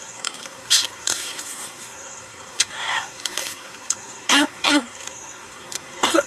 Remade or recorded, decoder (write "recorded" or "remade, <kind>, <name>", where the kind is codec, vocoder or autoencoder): remade, codec, SNAC